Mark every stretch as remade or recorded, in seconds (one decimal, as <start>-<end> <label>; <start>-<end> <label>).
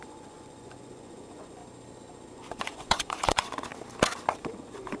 0.0-1.6 remade; 1.6-2.3 recorded; 2.3-3.7 remade; 3.7-4.3 recorded; 4.3-5.0 remade